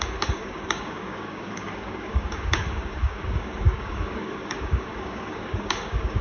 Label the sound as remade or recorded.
remade